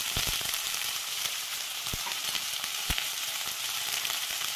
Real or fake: fake